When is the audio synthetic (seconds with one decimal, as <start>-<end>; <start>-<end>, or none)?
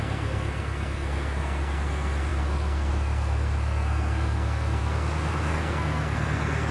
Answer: 0.0-6.7